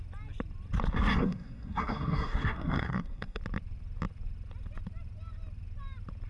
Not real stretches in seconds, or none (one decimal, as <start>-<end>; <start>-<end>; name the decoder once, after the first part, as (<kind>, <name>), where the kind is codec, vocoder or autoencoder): 1.2-3.4 (codec, SNAC)